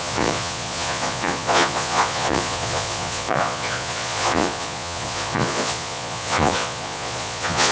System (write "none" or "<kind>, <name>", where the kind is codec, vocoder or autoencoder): vocoder, Vocos